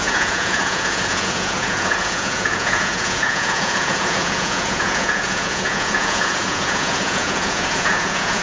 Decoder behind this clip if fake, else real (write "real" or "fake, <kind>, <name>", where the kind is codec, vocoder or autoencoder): fake, vocoder, Vocos